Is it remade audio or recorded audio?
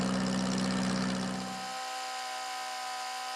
recorded